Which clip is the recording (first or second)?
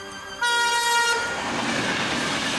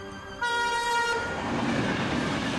first